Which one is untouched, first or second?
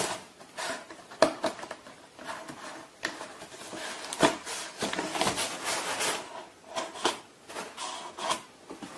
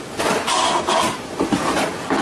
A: first